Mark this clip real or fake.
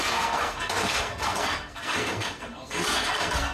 fake